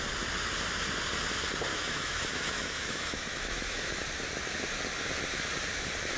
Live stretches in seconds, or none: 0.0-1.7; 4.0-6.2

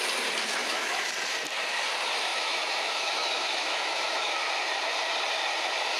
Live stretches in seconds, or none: 0.0-0.6; 1.1-2.3; 4.5-6.0

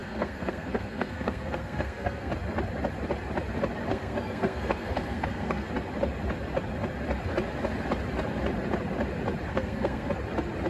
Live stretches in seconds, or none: 2.3-3.9; 5.7-9.5; 10.1-10.7